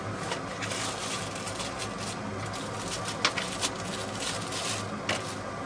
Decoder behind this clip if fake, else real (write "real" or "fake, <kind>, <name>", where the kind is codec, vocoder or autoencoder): real